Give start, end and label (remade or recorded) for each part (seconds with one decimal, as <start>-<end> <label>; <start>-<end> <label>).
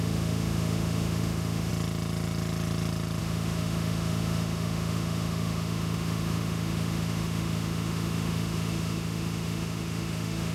0.0-1.7 remade; 1.7-3.2 recorded; 3.2-10.5 remade